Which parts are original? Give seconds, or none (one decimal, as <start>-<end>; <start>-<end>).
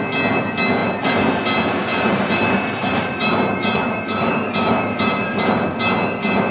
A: 0.0-0.8; 1.3-1.9; 5.8-6.5